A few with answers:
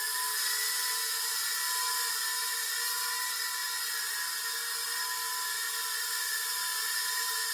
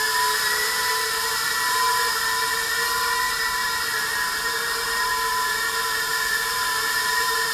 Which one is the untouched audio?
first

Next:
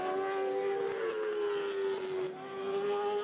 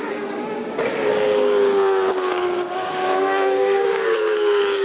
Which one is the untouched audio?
first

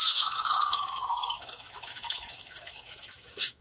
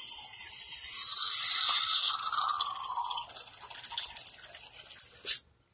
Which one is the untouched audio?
second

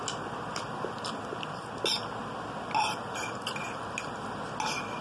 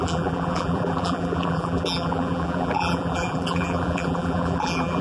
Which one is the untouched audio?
first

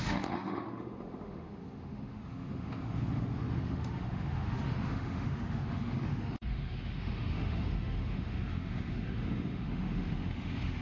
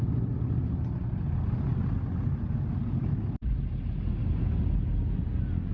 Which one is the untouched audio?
second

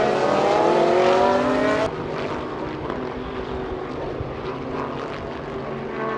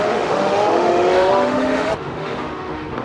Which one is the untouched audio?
first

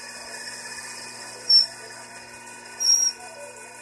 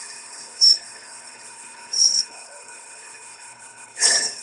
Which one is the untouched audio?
first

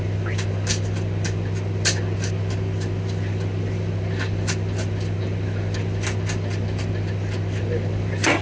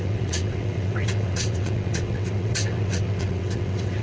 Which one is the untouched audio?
first